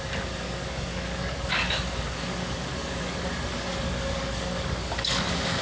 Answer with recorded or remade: remade